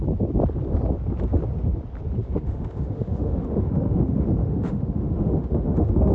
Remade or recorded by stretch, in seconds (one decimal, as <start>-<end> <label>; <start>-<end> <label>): 0.0-2.2 recorded; 2.2-6.1 remade